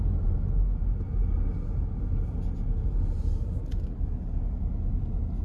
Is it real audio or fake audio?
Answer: real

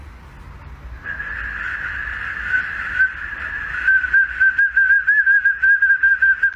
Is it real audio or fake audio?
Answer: real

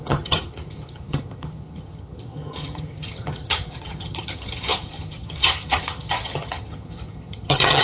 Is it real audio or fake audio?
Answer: fake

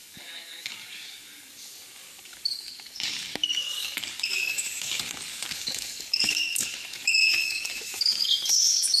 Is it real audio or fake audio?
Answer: fake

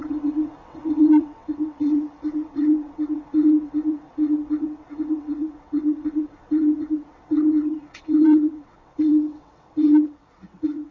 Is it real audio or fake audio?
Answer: fake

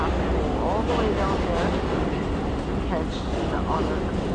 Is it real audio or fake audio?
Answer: real